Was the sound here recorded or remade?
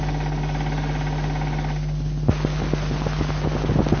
recorded